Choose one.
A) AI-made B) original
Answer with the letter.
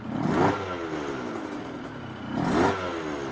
B